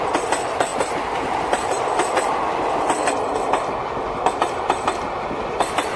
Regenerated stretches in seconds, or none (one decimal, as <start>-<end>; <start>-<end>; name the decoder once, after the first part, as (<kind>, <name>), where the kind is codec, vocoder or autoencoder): none